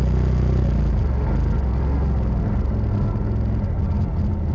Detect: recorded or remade recorded